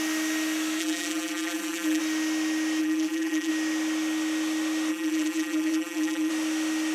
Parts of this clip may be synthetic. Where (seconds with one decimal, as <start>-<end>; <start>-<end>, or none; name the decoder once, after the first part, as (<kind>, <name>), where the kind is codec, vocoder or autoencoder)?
0.8-2.0 (vocoder, BigVGAN v2); 2.8-3.5; 4.9-6.3